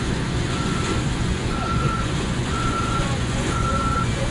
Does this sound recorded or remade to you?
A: remade